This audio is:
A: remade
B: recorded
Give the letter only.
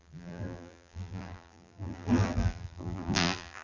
A